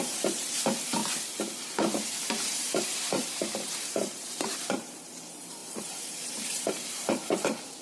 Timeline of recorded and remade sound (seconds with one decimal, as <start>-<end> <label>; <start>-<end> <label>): 0.0-7.8 remade